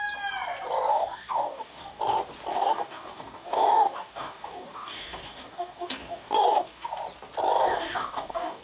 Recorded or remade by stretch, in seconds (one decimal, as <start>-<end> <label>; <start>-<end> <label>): 0.0-0.9 recorded; 0.9-2.0 remade; 2.0-2.5 recorded; 2.5-6.9 remade; 6.9-7.6 recorded; 7.6-8.6 remade